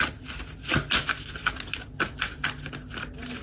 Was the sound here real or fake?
real